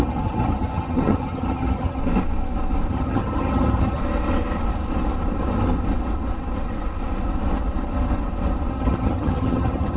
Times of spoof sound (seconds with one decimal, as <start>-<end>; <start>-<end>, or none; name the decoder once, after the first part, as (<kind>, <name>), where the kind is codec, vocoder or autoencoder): 0.0-2.0 (vocoder, HiFi-GAN); 2.9-4.0; 8.7-10.0